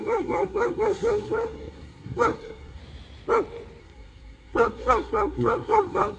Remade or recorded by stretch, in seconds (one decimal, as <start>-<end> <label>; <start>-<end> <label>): 0.0-2.8 remade; 2.8-3.8 recorded; 3.8-6.2 remade